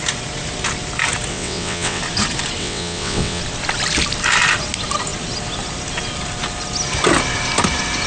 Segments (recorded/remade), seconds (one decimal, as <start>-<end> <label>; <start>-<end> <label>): 0.0-1.3 recorded; 1.3-2.0 remade; 2.0-2.6 recorded; 2.6-3.4 remade; 3.4-8.1 recorded